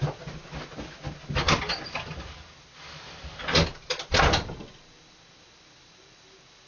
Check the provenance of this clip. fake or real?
real